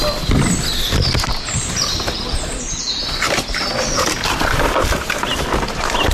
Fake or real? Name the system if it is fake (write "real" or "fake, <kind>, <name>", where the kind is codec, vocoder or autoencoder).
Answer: real